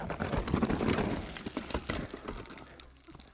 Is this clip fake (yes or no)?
no